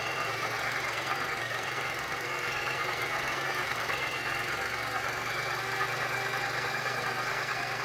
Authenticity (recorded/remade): remade